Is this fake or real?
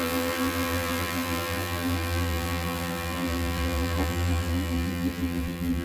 fake